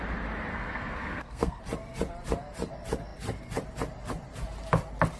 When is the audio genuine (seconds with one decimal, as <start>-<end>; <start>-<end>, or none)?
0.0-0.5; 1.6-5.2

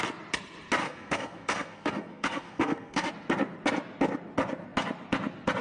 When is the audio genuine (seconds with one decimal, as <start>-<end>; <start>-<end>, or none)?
0.0-0.8; 3.1-5.6

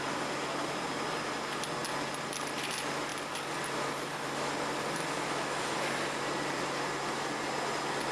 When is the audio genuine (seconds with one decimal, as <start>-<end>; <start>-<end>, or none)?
0.0-8.1

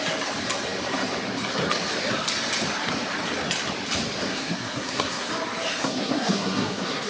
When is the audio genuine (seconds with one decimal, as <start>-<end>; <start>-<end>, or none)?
0.0-4.3; 5.3-5.8

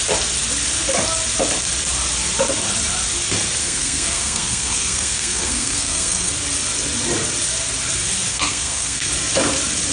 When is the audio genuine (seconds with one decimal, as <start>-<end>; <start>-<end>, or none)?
0.0-3.6; 6.3-8.3; 9.1-9.9

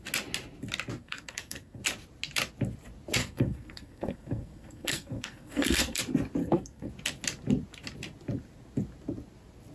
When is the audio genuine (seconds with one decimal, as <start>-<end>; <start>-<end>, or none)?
0.0-1.0; 1.8-3.2; 6.0-6.4; 6.9-9.7

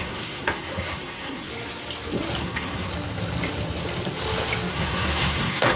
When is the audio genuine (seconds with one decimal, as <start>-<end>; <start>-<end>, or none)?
1.5-2.4; 2.9-4.7

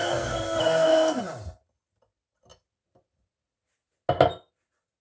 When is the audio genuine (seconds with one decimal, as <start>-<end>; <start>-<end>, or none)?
1.2-5.0